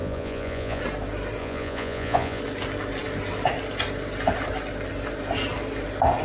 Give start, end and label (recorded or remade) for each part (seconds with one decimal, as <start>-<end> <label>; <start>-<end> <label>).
0.0-0.8 remade; 0.8-1.4 recorded; 1.4-2.4 remade; 2.4-6.2 recorded